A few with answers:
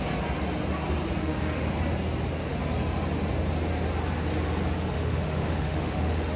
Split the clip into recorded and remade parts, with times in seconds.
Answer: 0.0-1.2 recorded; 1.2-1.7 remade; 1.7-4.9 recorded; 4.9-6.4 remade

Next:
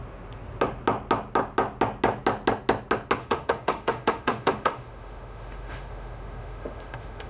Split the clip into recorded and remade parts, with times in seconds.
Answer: 0.0-3.2 recorded; 3.2-7.3 remade

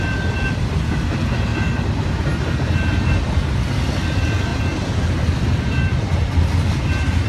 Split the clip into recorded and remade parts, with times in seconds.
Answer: 0.0-7.3 recorded

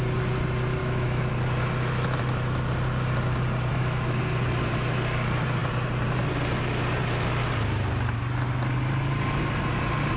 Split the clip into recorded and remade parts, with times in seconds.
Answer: 0.0-0.8 recorded; 0.8-1.3 remade; 1.3-3.7 recorded; 3.7-4.2 remade; 4.2-10.2 recorded

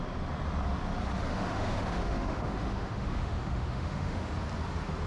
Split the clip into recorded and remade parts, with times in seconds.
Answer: 0.0-1.3 recorded; 1.3-4.3 remade; 4.3-5.1 recorded

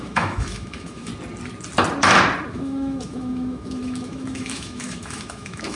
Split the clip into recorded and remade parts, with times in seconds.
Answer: 0.0-1.1 remade; 1.1-2.5 recorded; 2.5-5.8 remade

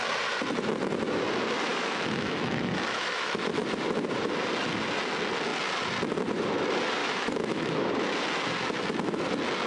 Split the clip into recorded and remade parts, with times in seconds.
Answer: 0.0-1.7 recorded; 1.7-3.6 remade; 3.6-7.0 recorded; 7.0-7.9 remade; 7.9-9.7 recorded

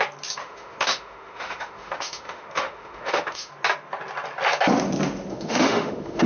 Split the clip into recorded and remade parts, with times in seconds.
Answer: 0.0-0.4 recorded; 0.4-3.5 remade; 3.5-5.3 recorded; 5.3-6.3 remade